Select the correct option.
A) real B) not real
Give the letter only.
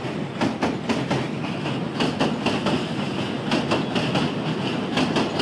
A